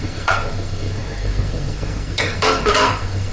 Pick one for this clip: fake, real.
fake